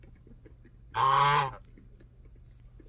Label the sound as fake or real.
real